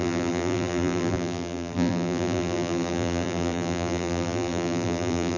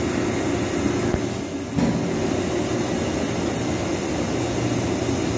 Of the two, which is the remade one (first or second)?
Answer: first